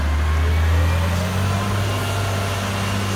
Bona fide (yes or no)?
yes